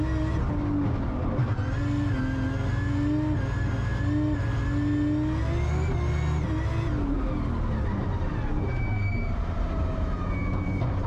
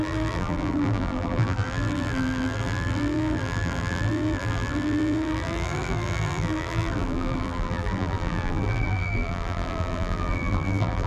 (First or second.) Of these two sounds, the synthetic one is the second